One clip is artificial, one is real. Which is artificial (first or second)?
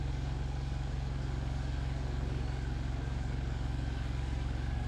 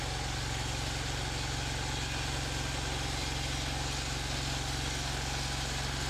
first